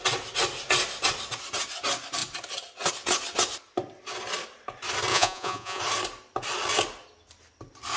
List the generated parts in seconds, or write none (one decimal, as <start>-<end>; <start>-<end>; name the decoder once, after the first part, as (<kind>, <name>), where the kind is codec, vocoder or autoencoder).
5.1-5.8 (vocoder, Vocos)